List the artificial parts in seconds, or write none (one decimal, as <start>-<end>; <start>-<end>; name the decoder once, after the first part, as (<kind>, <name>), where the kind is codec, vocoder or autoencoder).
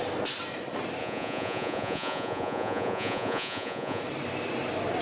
1.0-4.0 (vocoder, Vocos)